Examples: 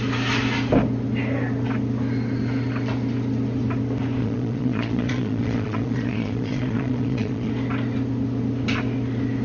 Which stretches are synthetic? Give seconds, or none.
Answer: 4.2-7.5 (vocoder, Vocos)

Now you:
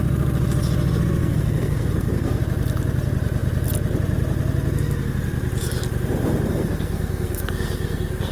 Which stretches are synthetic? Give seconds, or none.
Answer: 1.2-2.4 (codec, SNAC); 6.5-8.3

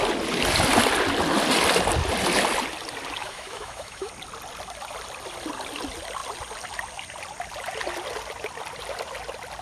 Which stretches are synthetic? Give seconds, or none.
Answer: 3.2-4.1 (autoencoder, DAC-VAE)

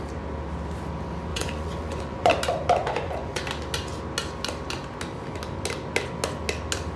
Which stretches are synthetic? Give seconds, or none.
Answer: 1.3-2.3 (vocoder, Vocos); 2.8-3.4

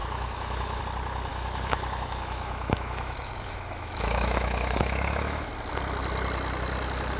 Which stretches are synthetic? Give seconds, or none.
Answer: 0.0-0.8 (autoencoder, DAC-VAE); 1.3-5.5